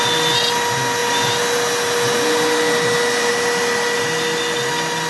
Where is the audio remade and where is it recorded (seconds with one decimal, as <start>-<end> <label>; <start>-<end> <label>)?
0.0-5.1 recorded